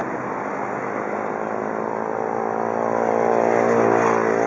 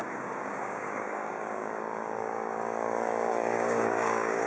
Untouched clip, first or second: first